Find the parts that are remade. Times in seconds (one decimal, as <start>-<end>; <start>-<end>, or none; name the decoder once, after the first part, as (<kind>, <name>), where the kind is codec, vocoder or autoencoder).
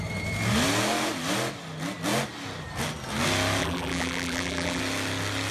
3.6-4.8 (vocoder, BigVGAN v2)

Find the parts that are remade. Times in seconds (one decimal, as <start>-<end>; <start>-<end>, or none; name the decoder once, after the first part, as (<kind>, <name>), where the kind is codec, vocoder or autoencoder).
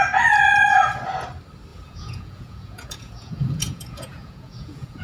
1.7-5.0 (vocoder, Vocos)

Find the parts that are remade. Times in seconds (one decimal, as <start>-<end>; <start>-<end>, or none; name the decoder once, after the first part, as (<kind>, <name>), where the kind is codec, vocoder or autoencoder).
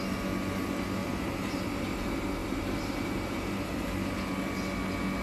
1.0-1.6 (vocoder, BigVGAN v2); 2.4-4.1